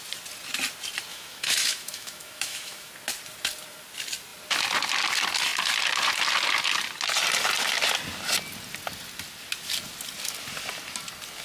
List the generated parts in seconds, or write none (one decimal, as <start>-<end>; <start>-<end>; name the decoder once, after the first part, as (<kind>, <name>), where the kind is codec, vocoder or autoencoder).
1.1-2.9 (autoencoder, DAC-VAE)